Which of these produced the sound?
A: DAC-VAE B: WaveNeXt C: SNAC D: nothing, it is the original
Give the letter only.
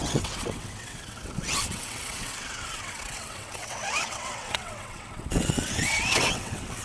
B